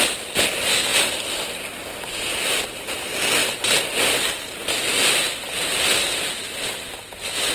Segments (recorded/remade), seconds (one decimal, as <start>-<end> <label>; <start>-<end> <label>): 0.0-0.9 recorded; 0.9-2.1 remade; 2.1-3.4 recorded; 3.4-4.2 remade; 4.2-7.5 recorded